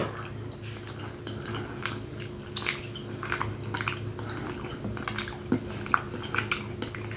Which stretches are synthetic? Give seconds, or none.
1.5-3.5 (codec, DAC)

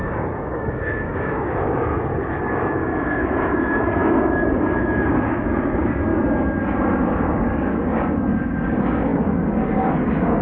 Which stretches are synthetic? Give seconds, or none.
0.0-1.9 (codec, DAC); 2.4-6.1; 7.1-10.4

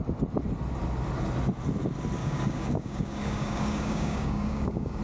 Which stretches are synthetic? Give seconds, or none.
2.2-5.0 (codec, DAC)

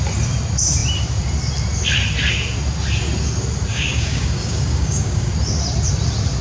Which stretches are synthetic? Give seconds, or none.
3.7-5.3 (codec, DAC)

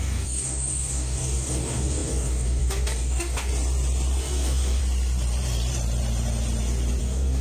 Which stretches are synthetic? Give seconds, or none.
0.0-3.5 (codec, DAC); 4.2-4.8; 7.0-7.4

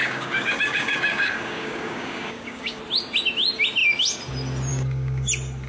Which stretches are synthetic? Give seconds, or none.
0.0-2.8 (codec, DAC); 4.7-5.3

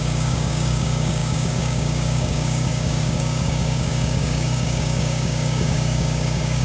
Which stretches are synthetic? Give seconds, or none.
0.0-6.6 (codec, DAC)

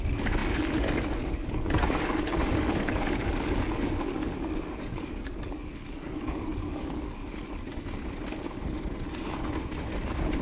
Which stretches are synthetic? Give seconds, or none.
0.0-7.7 (codec, DAC)